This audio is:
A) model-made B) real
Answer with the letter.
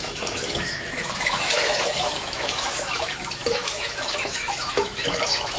A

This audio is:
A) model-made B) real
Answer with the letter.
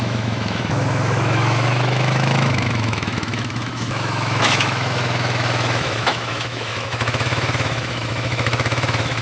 A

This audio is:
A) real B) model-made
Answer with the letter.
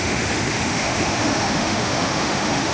B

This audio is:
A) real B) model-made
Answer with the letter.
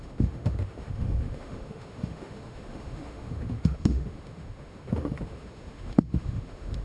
B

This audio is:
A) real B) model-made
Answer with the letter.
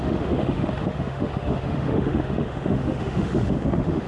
B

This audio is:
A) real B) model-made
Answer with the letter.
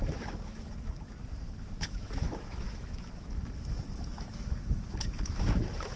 B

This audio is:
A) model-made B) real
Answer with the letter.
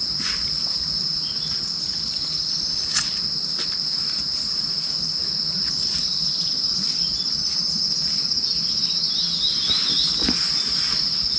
B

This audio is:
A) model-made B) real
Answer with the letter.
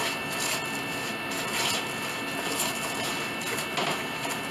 B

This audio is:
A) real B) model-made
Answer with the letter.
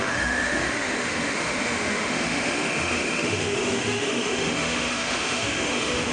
B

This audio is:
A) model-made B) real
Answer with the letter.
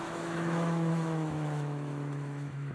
A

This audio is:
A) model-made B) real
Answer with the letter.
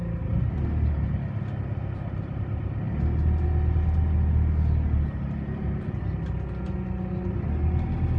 B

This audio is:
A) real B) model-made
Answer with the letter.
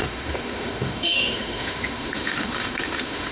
B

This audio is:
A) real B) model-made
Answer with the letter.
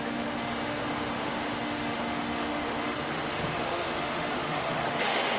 B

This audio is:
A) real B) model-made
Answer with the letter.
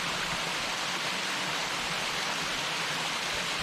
A